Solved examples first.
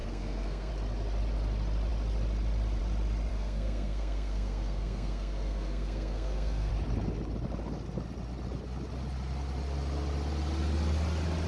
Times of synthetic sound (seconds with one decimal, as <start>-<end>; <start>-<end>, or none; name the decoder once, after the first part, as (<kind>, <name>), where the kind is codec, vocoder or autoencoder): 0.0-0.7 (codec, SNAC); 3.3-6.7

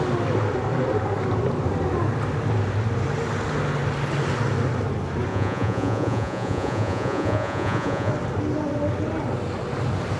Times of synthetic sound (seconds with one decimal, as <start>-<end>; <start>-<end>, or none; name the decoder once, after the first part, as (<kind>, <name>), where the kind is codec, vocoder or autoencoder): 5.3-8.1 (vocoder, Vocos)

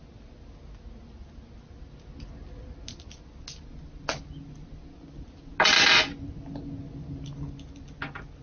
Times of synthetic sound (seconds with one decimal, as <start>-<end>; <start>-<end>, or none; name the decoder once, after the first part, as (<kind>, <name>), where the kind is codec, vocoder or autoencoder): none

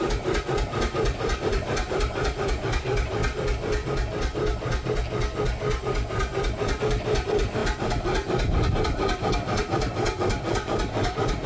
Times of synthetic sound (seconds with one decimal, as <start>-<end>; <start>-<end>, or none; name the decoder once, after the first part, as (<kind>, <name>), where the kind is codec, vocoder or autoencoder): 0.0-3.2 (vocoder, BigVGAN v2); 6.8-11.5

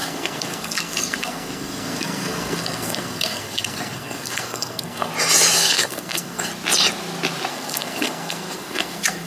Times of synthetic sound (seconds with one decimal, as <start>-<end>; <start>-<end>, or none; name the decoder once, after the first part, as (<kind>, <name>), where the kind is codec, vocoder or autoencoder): 0.0-5.1 (codec, SNAC); 5.5-6.5; 7.5-9.3